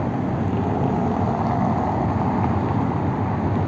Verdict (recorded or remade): recorded